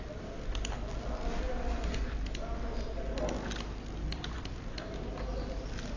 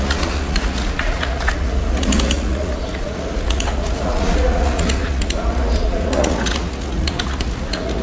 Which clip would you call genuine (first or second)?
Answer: first